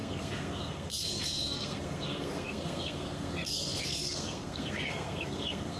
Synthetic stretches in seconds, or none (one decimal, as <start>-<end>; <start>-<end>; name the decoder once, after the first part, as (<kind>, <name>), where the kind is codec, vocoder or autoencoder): 0.0-5.8 (codec, SNAC)